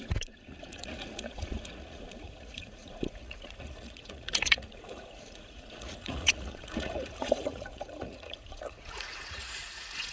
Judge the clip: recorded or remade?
remade